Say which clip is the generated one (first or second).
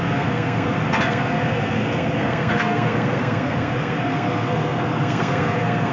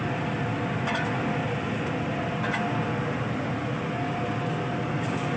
first